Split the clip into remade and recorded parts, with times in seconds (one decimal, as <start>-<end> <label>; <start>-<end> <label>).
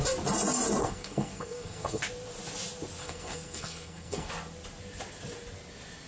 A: 0.0-0.8 recorded; 0.8-2.0 remade; 2.0-3.0 recorded; 3.0-4.3 remade; 4.3-6.1 recorded